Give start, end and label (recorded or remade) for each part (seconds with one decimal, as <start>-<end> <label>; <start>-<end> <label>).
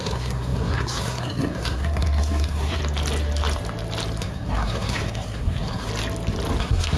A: 0.0-2.8 remade; 2.8-4.2 recorded; 4.2-5.9 remade; 5.9-6.6 recorded; 6.6-7.0 remade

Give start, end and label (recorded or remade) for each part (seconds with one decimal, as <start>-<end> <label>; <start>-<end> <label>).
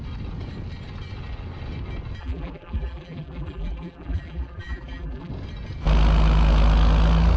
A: 0.0-2.2 recorded; 2.2-5.3 remade; 5.3-7.4 recorded